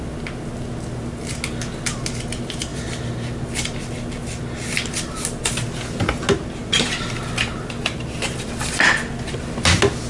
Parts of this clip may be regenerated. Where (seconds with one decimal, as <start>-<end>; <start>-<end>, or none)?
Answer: none